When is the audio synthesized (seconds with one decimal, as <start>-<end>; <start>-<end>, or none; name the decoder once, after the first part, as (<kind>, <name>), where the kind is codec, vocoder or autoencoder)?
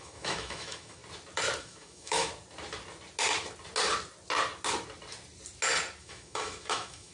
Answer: 0.0-1.0 (autoencoder, DAC-VAE); 1.6-2.3; 6.0-7.1